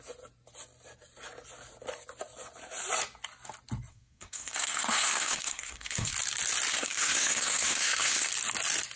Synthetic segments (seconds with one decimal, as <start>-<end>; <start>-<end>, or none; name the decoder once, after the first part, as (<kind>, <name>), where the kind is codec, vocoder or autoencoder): 3.9-6.1 (codec, SNAC); 6.7-8.3